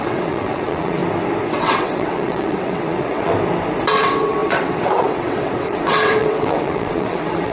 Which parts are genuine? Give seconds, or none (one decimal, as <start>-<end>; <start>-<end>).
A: 1.0-1.5; 3.3-3.9